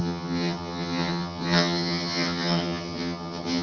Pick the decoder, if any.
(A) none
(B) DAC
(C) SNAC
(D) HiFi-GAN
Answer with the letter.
D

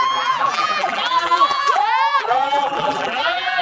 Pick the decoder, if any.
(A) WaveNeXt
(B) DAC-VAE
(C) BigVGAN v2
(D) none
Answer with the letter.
C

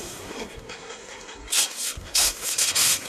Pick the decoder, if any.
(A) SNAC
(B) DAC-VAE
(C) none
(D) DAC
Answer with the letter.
A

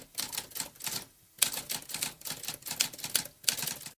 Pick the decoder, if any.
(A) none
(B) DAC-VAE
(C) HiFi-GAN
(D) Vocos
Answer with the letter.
A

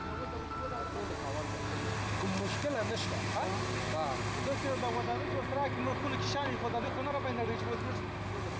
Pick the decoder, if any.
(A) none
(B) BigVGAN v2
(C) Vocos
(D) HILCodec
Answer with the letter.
A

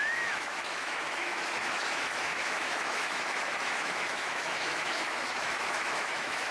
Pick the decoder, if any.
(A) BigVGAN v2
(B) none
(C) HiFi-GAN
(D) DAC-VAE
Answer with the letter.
D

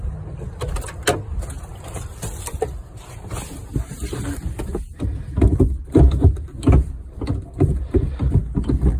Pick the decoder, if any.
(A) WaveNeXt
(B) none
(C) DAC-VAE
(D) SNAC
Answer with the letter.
B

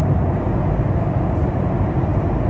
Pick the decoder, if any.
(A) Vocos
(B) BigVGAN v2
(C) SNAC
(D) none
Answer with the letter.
D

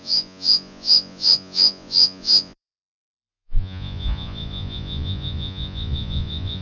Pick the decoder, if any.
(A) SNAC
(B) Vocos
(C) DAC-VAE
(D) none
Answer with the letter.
B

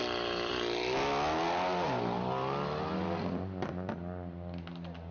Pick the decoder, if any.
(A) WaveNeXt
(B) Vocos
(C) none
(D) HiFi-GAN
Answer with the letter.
C